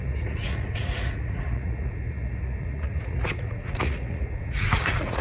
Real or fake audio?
fake